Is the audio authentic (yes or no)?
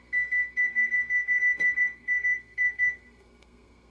no